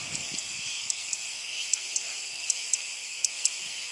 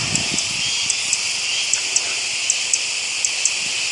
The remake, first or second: first